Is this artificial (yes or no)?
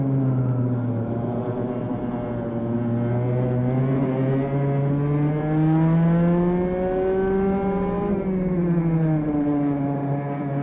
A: no